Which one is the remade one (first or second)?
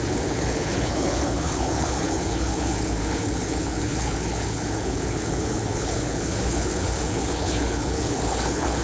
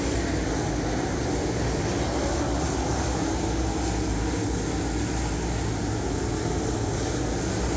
first